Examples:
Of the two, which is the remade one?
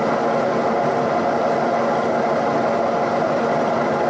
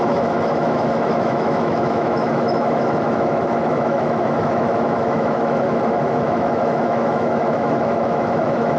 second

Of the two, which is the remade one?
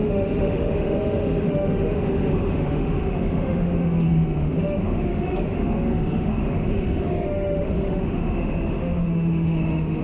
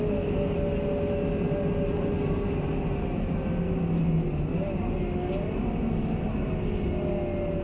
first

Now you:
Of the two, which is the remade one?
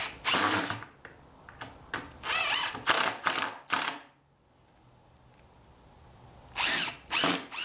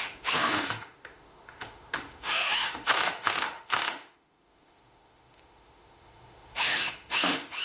second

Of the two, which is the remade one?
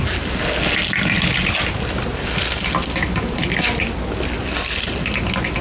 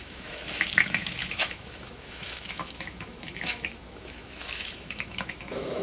second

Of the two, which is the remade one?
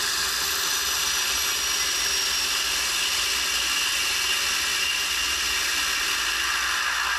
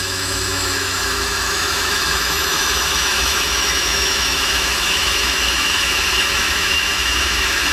second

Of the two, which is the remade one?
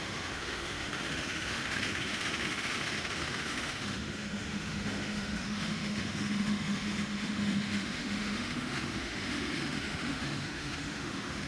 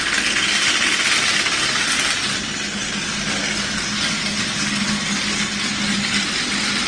first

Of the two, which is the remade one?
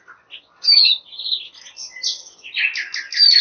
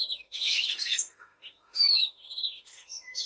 second